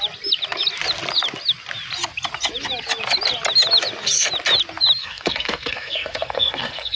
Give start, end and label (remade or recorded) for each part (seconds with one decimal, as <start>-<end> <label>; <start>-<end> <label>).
0.0-5.0 recorded; 5.0-7.0 remade